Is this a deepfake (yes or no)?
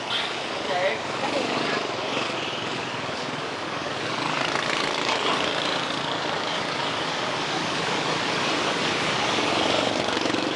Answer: yes